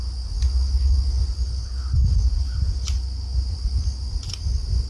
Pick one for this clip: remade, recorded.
recorded